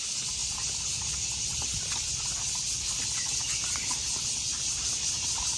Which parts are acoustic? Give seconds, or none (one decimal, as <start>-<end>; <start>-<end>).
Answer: 0.0-5.6